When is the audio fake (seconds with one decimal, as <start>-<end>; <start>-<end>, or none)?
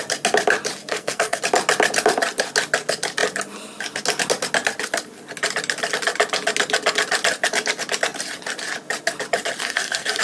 0.8-1.4; 9.6-10.2